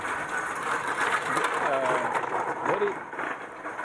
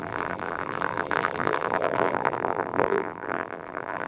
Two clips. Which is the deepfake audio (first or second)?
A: second